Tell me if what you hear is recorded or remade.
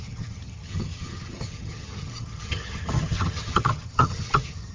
remade